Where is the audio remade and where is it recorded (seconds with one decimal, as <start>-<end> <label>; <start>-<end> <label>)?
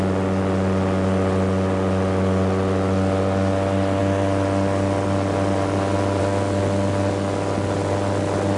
0.0-8.6 recorded